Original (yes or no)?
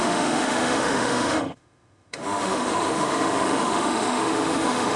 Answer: no